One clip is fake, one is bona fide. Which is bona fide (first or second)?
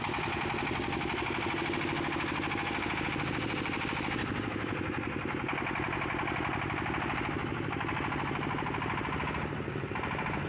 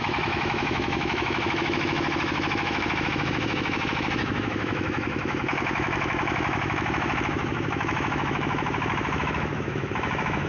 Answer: first